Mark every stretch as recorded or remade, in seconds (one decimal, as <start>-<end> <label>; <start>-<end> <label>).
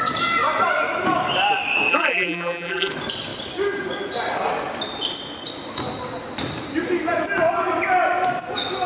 0.0-1.9 recorded; 1.9-2.9 remade; 2.9-8.9 recorded